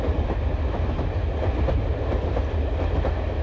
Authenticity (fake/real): real